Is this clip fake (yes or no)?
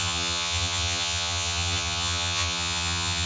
yes